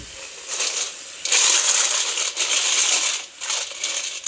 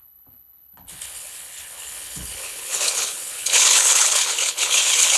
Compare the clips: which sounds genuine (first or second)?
first